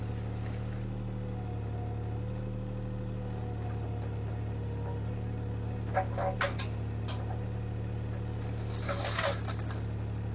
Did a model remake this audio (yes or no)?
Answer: no